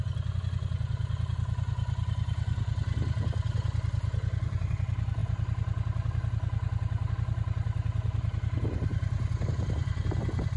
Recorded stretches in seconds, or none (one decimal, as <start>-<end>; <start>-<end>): 0.0-10.6